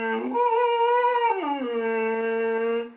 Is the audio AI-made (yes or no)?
no